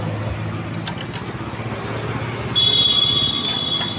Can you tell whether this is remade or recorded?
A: recorded